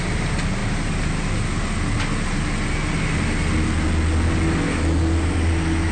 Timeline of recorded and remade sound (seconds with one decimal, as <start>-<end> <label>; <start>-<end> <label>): 0.0-5.9 recorded

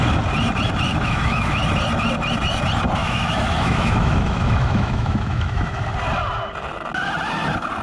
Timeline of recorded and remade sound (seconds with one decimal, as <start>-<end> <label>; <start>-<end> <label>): 0.0-0.9 recorded; 0.9-1.6 remade; 1.6-3.0 recorded; 3.0-5.9 remade; 5.9-7.8 recorded

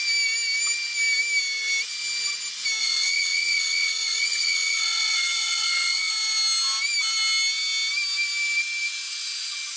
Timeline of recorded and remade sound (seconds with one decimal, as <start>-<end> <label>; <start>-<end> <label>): 0.0-2.8 recorded; 2.8-6.1 remade; 6.1-9.8 recorded

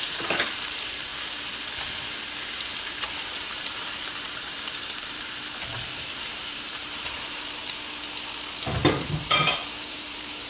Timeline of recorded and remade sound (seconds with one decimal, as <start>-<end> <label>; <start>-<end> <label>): 0.0-1.1 remade; 1.1-2.6 recorded; 2.6-7.6 remade; 7.6-8.9 recorded; 8.9-10.5 remade

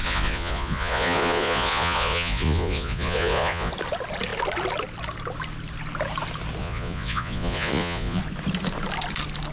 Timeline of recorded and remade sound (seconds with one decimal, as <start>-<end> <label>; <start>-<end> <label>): 0.0-3.7 remade; 3.7-6.6 recorded; 6.6-8.2 remade; 8.2-9.5 recorded

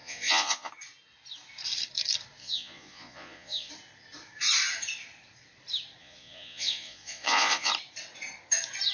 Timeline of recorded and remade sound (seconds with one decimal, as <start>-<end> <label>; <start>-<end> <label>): 0.0-0.7 remade; 0.7-2.4 recorded; 2.4-3.7 remade; 3.7-6.0 recorded; 6.0-7.7 remade; 7.7-8.9 recorded